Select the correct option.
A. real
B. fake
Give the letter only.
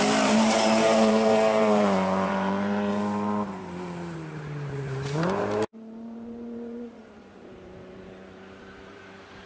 B